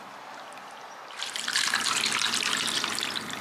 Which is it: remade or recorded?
remade